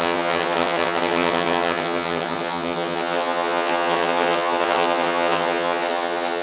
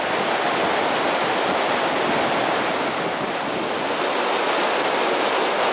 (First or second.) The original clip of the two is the second